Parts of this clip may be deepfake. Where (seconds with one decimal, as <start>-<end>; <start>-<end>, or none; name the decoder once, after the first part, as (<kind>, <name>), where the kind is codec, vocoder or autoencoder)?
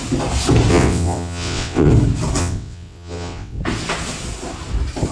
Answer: 0.7-1.9 (vocoder, WaveNeXt); 2.4-3.6